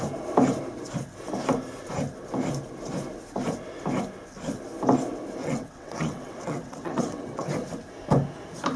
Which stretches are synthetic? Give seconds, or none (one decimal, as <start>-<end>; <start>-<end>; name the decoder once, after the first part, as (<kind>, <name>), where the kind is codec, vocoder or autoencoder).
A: 5.4-7.5 (vocoder, WaveNeXt)